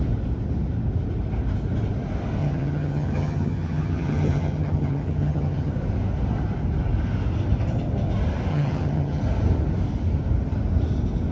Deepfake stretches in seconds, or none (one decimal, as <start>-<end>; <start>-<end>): 2.4-5.7; 8.5-9.2